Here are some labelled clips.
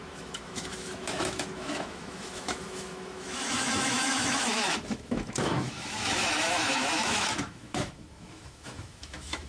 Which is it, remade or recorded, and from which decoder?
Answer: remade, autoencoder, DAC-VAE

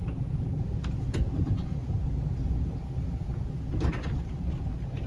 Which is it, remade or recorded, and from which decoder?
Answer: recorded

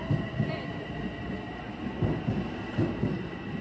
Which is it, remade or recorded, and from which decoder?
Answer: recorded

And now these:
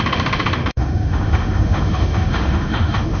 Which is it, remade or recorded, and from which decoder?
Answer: remade, autoencoder, DAC-VAE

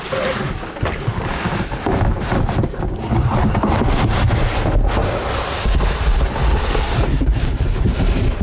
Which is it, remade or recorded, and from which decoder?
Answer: recorded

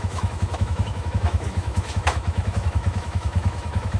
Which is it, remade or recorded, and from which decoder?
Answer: remade, autoencoder, DAC-VAE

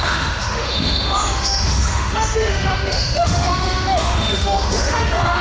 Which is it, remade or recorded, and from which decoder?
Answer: remade, autoencoder, DAC-VAE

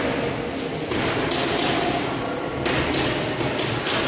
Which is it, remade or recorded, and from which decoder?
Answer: recorded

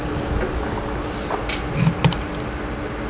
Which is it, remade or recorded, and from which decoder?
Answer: recorded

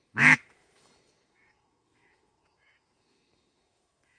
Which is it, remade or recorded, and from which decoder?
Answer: remade, autoencoder, DAC-VAE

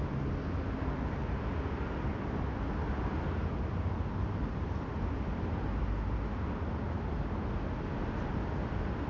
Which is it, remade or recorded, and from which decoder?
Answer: recorded